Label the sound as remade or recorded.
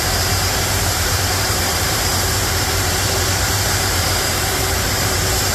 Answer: remade